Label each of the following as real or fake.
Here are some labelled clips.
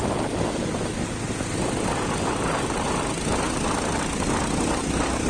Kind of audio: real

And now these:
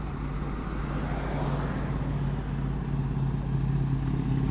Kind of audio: real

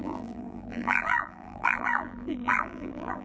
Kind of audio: fake